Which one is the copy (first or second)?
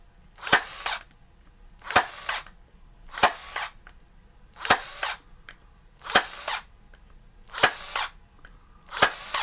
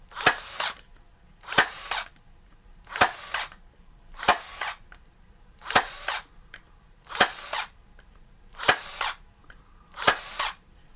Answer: second